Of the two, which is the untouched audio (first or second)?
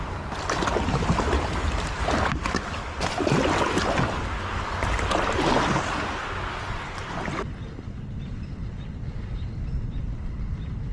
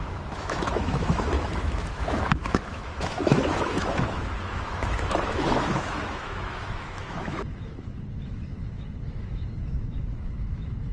first